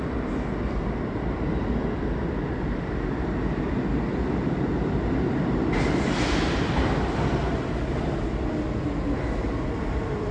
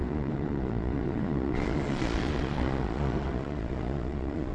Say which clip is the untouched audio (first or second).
first